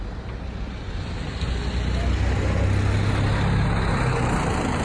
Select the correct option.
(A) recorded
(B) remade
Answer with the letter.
A